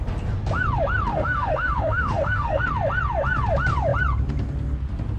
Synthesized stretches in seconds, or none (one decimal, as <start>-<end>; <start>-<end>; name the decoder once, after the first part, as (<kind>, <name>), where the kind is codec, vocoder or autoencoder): 1.1-2.6 (autoencoder, DAC-VAE)